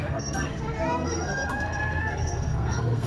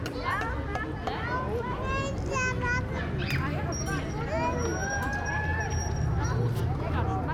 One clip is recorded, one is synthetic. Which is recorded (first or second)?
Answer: second